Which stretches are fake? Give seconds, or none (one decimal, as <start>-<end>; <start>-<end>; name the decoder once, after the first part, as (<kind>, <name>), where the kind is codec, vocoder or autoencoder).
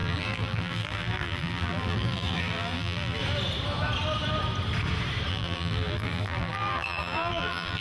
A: 0.0-3.2 (vocoder, BigVGAN v2); 5.3-7.8